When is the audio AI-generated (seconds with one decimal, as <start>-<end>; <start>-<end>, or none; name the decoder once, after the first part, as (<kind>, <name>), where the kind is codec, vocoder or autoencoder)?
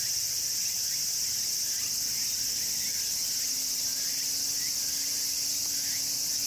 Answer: none